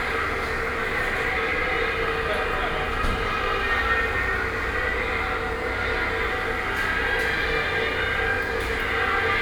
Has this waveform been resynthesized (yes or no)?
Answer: no